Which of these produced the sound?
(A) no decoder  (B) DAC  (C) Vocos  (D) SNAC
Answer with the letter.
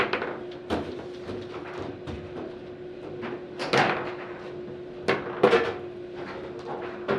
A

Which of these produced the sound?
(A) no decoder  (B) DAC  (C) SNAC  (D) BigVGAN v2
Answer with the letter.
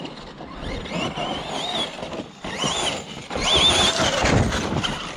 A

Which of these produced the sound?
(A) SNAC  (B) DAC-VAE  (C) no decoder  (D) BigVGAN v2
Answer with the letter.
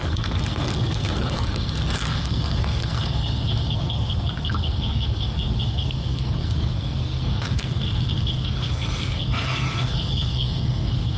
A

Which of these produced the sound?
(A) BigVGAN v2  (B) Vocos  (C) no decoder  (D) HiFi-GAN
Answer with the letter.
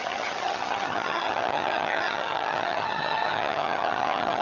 D